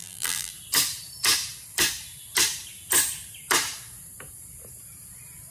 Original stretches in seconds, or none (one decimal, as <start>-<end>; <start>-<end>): 0.5-5.5